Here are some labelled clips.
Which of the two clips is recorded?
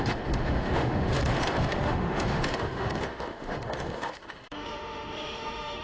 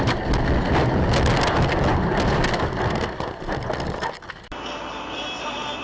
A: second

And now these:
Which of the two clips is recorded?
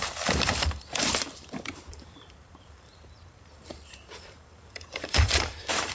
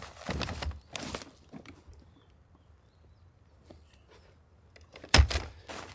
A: second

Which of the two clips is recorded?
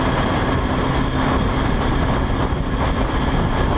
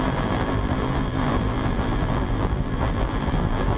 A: first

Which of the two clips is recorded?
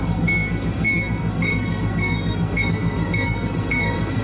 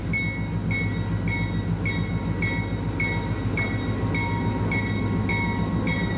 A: second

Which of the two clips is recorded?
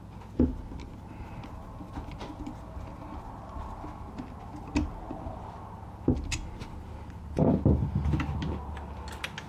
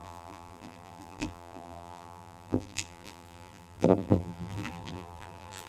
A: first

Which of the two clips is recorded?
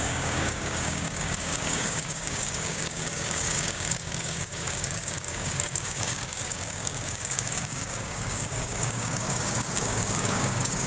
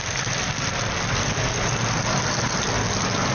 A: second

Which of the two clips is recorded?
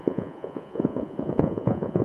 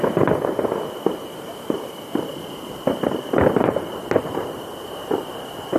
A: second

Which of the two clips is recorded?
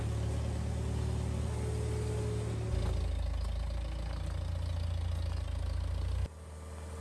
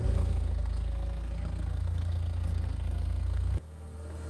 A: first